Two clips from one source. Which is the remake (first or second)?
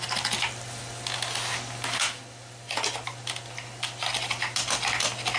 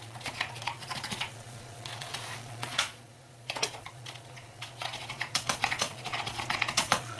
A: second